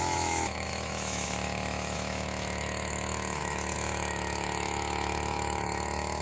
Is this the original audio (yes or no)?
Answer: no